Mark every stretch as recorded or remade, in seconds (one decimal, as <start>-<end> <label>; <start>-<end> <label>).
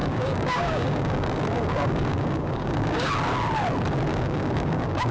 0.0-3.1 remade; 3.1-4.1 recorded; 4.1-5.1 remade